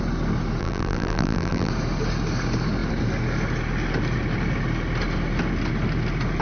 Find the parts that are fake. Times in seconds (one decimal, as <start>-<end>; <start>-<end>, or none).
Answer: 0.6-1.7